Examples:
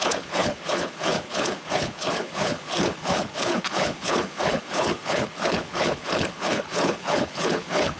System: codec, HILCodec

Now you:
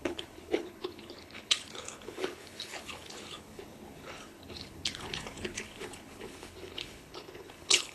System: codec, HILCodec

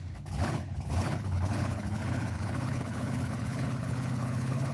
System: codec, HILCodec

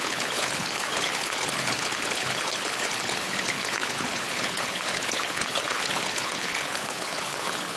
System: codec, HILCodec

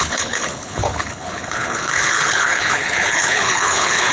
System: codec, HILCodec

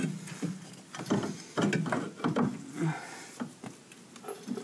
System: none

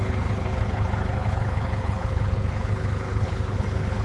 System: codec, HILCodec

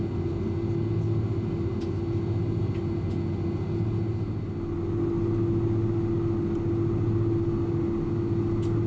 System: none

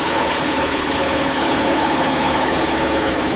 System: codec, HILCodec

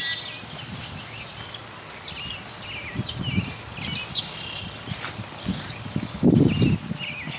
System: none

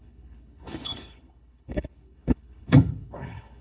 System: codec, HILCodec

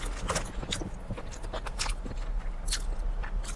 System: none